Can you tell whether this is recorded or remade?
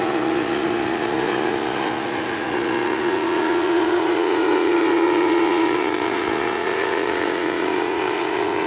remade